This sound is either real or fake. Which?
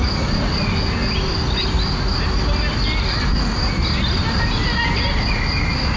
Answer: real